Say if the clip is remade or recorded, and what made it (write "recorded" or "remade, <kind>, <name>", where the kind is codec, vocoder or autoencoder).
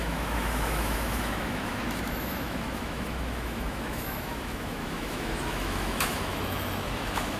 remade, autoencoder, DAC-VAE